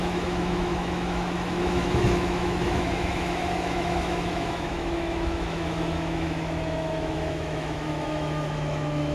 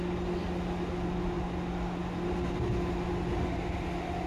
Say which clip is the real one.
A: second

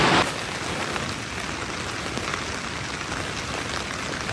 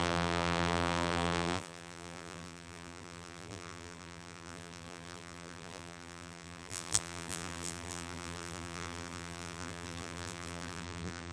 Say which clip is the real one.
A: first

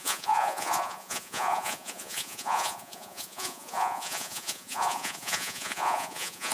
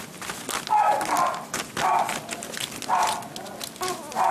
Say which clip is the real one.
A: second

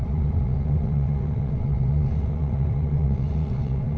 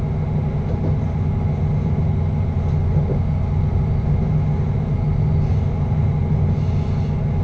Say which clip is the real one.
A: second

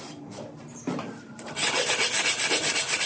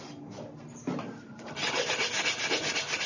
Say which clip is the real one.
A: second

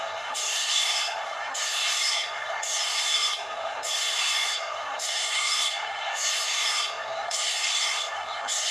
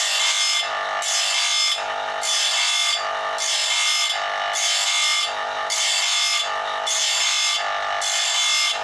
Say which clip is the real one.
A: second